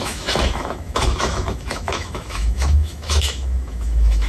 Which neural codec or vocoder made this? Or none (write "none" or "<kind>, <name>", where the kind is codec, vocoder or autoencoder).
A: autoencoder, DAC-VAE